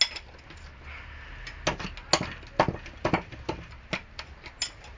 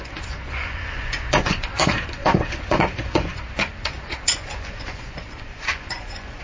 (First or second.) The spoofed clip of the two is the second